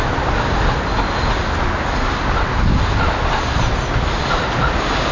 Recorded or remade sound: recorded